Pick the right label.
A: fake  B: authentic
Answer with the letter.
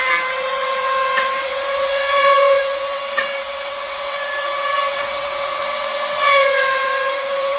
A